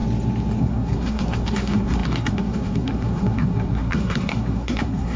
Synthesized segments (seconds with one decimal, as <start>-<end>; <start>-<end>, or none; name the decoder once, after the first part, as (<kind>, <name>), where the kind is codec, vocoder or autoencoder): 0.6-5.2 (codec, SNAC)